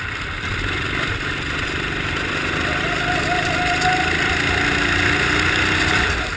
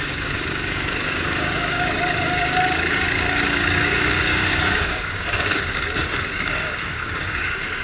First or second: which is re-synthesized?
second